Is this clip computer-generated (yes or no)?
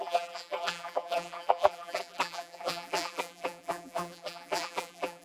yes